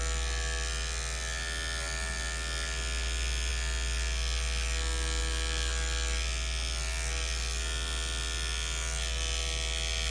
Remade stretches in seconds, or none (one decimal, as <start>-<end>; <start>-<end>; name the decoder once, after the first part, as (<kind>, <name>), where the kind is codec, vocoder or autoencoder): none